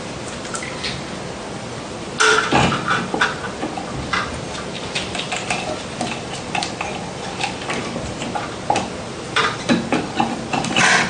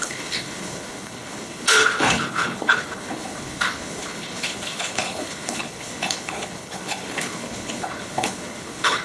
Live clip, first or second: first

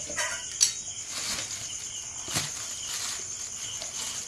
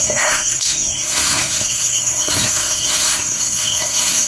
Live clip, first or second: first